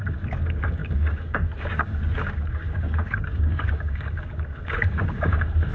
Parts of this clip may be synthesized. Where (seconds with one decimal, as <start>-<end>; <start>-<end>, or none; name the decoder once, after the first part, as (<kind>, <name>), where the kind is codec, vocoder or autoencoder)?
0.0-5.7 (codec, DAC)